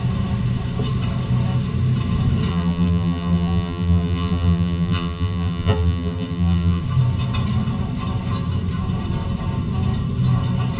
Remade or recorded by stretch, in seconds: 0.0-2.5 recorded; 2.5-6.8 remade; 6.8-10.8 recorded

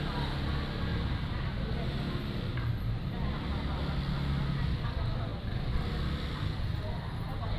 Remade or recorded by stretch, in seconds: 0.0-7.6 recorded

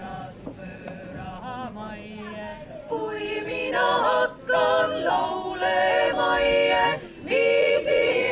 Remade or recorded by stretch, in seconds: 0.0-1.4 remade; 1.4-7.6 recorded; 7.6-8.3 remade

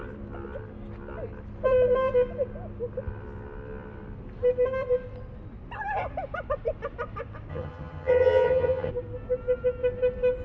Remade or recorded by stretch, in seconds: 0.0-7.5 recorded; 7.5-8.9 remade; 8.9-10.4 recorded

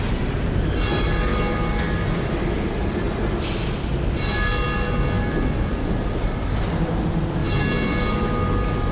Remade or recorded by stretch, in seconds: 0.0-8.9 recorded